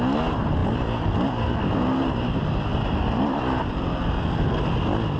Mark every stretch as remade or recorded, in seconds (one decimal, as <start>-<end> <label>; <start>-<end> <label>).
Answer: 0.0-5.2 recorded